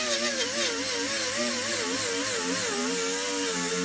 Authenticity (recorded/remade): recorded